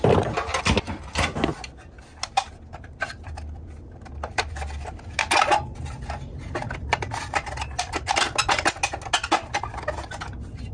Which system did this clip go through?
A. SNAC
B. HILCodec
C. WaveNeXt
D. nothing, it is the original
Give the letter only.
D